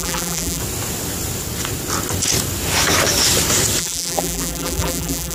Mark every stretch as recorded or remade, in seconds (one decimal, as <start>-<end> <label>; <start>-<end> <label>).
0.0-0.6 remade; 0.6-3.8 recorded; 3.8-5.3 remade

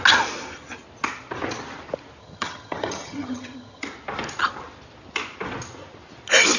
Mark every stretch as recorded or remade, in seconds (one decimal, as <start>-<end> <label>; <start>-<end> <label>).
0.0-2.2 recorded; 2.2-3.8 remade; 3.8-6.6 recorded

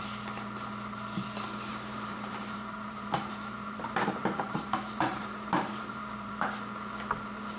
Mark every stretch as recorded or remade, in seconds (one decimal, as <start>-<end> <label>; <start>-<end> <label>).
0.0-1.7 recorded; 1.7-6.3 remade; 6.3-7.6 recorded

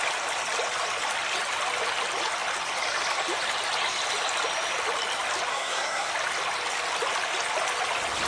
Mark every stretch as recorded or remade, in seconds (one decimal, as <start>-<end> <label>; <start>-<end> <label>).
0.0-5.5 recorded; 5.5-6.1 remade; 6.1-8.3 recorded

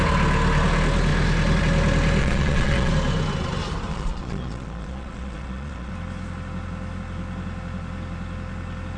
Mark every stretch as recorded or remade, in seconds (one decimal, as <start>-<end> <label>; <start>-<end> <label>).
0.0-2.2 recorded; 2.2-2.9 remade; 2.9-3.9 recorded; 3.9-5.9 remade; 5.9-9.0 recorded

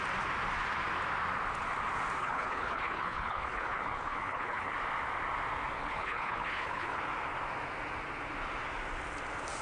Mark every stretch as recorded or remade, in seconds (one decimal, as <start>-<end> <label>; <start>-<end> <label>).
0.0-2.2 recorded; 2.2-4.7 remade; 4.7-5.8 recorded; 5.8-7.0 remade; 7.0-9.6 recorded

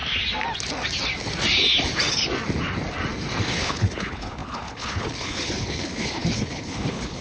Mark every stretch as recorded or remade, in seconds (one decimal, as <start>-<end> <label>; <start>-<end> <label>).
0.0-3.4 recorded; 3.4-7.2 remade

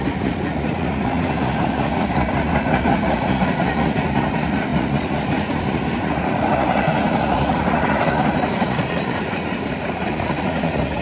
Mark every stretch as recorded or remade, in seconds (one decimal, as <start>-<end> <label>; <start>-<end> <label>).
0.0-11.0 remade